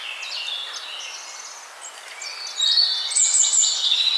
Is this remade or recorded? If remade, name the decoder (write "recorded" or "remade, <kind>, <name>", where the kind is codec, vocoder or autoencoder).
recorded